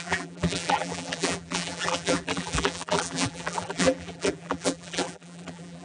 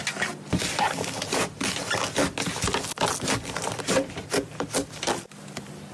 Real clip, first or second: second